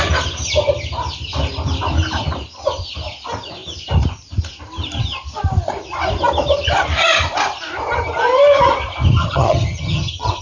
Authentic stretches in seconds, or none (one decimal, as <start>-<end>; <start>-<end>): 0.0-9.2